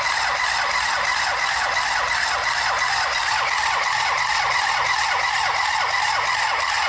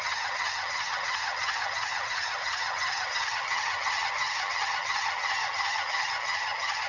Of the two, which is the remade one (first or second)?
second